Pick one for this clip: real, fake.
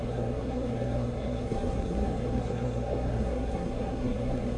fake